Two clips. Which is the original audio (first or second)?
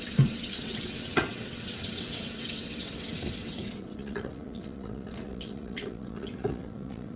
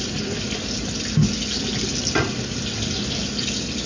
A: second